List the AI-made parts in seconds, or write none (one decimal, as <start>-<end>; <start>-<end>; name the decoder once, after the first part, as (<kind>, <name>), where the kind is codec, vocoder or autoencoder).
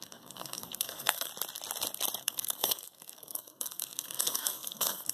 0.0-1.3 (codec, SNAC); 2.2-5.1